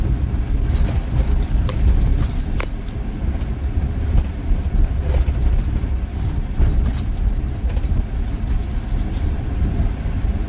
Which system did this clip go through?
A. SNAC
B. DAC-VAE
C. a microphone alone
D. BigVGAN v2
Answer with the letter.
D